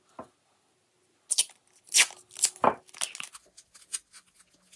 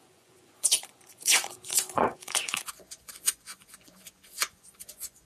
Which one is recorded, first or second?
first